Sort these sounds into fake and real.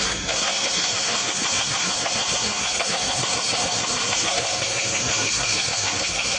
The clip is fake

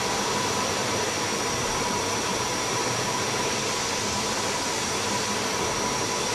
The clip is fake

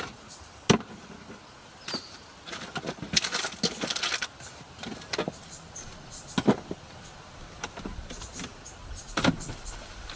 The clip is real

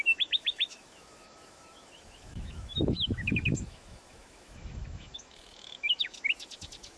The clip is fake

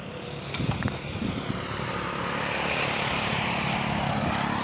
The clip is real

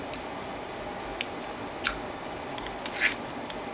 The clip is real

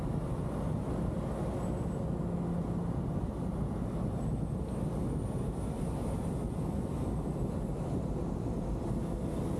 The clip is real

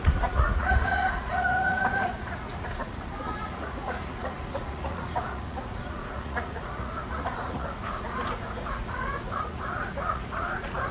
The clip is fake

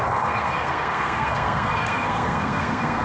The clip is fake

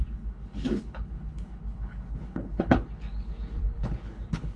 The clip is fake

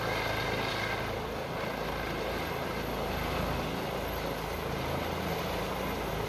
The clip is real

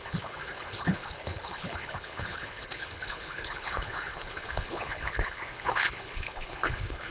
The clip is fake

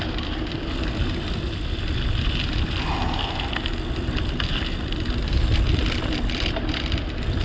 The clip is real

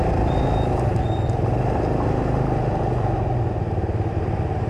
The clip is real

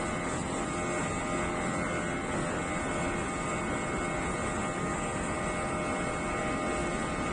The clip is real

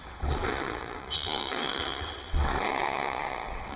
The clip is fake